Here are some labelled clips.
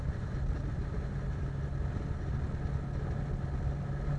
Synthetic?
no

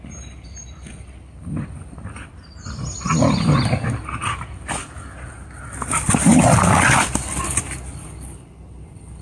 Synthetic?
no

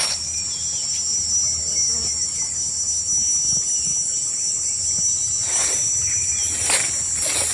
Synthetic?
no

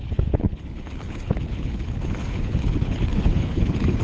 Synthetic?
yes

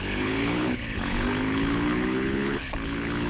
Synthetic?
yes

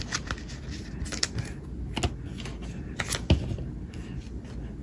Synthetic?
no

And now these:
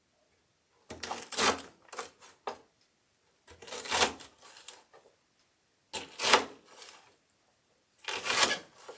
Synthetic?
no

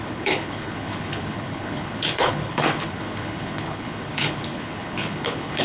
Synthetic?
yes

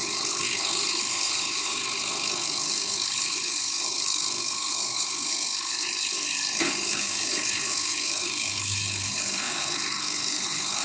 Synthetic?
yes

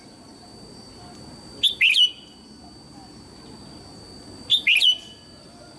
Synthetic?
no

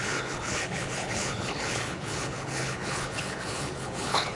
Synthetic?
yes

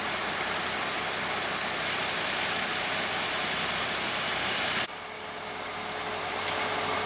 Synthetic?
no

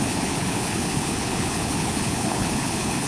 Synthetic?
yes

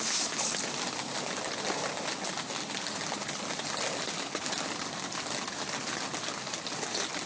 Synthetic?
no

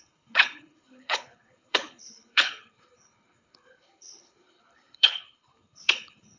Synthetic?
yes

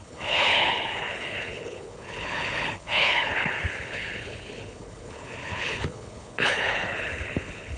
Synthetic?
yes